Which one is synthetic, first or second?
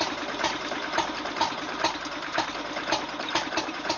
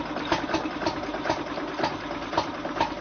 first